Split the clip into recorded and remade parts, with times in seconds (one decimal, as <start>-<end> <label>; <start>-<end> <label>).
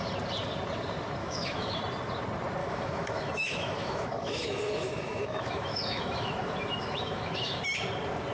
0.0-1.2 recorded; 1.2-1.8 remade; 1.8-2.6 recorded; 2.6-7.6 remade; 7.6-8.3 recorded